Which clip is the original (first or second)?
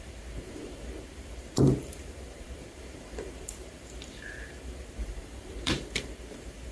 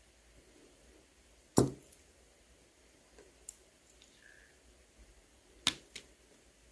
second